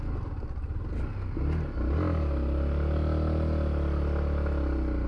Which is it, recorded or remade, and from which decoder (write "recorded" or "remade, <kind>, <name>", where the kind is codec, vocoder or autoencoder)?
recorded